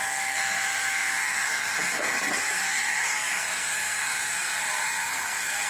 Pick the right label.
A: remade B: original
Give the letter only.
A